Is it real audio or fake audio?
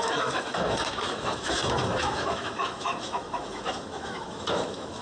fake